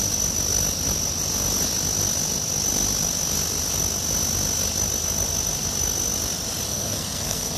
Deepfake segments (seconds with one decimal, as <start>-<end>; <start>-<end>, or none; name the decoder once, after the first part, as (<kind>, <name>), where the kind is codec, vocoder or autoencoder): 6.7-7.6 (codec, SNAC)